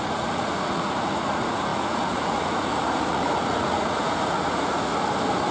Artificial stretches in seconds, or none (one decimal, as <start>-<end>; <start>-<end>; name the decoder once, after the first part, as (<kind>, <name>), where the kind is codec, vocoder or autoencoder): 0.0-4.9 (vocoder, Vocos)